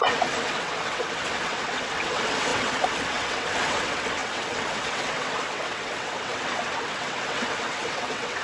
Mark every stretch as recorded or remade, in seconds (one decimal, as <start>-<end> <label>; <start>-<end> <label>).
0.0-8.4 remade